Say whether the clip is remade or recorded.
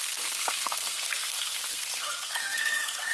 remade